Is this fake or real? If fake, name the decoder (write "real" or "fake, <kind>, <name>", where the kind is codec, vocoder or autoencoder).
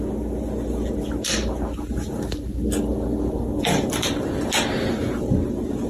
real